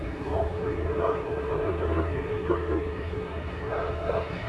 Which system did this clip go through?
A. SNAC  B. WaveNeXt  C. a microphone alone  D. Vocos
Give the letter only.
A